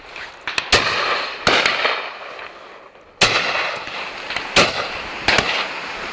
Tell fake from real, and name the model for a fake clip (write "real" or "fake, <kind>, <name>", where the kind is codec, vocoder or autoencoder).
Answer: real